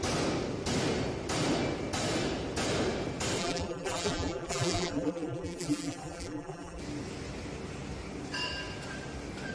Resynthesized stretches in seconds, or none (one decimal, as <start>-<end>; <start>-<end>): 3.4-6.8